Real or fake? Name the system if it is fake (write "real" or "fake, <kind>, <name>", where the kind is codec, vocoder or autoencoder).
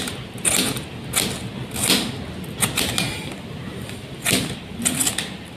real